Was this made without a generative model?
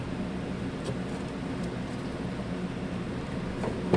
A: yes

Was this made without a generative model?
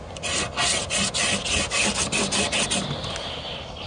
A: yes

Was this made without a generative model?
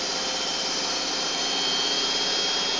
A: yes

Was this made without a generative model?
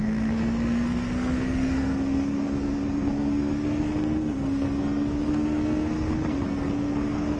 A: no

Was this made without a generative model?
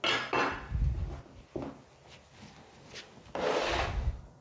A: yes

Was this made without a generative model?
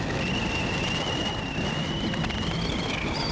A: yes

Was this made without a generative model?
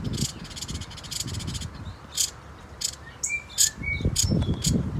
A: yes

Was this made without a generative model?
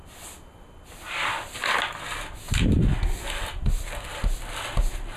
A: yes